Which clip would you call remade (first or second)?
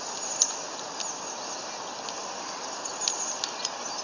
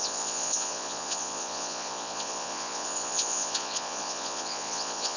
second